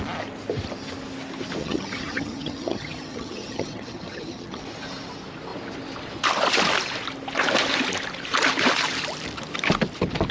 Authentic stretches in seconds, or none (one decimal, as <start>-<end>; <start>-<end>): 0.0-1.6; 4.6-10.3